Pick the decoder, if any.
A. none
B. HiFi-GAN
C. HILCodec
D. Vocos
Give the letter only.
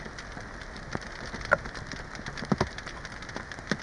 A